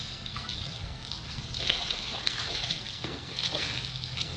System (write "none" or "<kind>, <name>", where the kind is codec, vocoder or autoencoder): codec, SNAC